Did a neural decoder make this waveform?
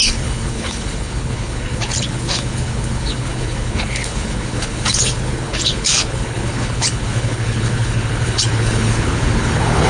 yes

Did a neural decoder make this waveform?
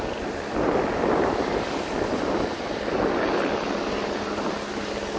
no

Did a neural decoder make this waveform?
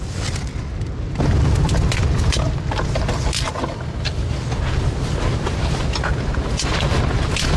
no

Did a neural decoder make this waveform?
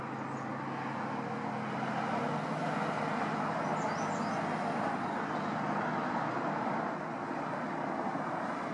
no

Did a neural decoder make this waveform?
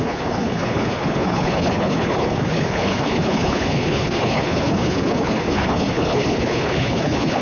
yes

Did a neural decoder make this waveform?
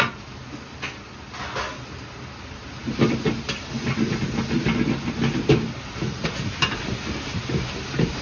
no